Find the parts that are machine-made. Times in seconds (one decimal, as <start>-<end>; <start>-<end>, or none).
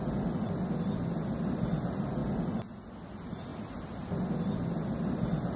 none